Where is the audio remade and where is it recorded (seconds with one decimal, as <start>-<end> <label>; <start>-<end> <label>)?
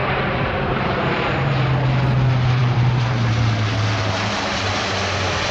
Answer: 0.0-1.6 remade; 1.6-2.6 recorded; 2.6-4.5 remade; 4.5-5.5 recorded